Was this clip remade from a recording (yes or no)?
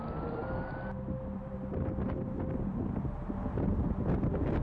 no